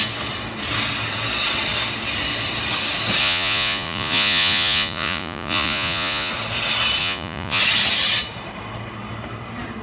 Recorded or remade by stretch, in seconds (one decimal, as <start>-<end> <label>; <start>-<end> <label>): 0.0-3.2 recorded; 3.2-6.3 remade; 6.3-7.0 recorded; 7.0-7.6 remade; 7.6-9.8 recorded